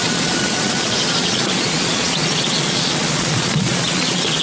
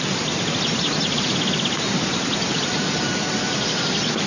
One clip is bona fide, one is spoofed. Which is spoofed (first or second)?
first